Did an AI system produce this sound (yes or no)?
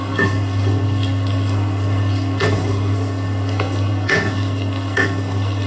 yes